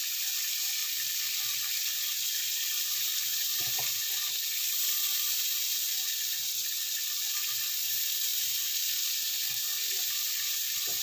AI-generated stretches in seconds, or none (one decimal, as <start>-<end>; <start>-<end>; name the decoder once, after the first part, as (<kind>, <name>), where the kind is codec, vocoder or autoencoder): 0.8-1.7 (vocoder, BigVGAN v2)